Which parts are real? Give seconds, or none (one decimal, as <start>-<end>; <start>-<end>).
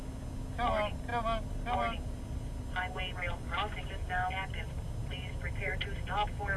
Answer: 0.0-6.6